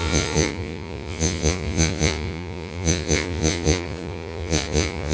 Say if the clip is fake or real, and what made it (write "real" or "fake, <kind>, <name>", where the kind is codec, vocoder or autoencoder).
fake, vocoder, Vocos